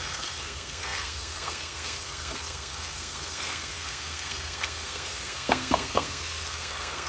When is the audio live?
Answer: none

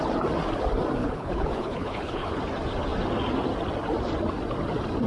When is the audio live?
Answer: 0.0-1.0; 2.4-5.1

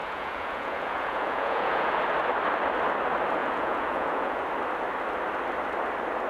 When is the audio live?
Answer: 2.0-3.4; 4.4-6.3

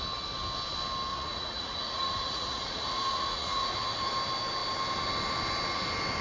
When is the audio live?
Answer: 0.0-1.1; 4.1-6.2

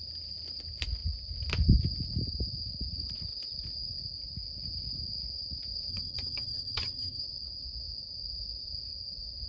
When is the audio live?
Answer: 0.0-5.9; 7.2-9.5

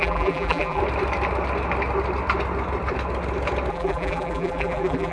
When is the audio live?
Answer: 0.8-3.7

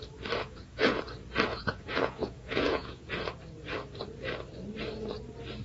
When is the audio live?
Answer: 0.0-0.4; 1.0-1.5; 3.1-5.6

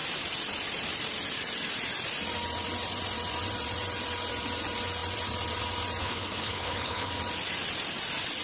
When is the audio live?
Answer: 0.0-6.0; 7.1-8.4